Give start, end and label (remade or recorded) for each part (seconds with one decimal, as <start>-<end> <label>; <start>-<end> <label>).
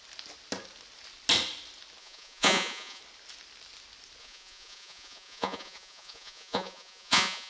0.0-2.0 recorded; 2.0-3.0 remade; 3.0-4.2 recorded; 4.2-7.5 remade